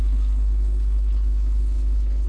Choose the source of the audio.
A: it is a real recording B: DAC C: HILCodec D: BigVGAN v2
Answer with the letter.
C